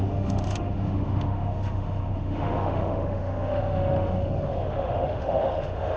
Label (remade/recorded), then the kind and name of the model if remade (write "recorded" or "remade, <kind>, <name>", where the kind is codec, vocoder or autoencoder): remade, autoencoder, DAC-VAE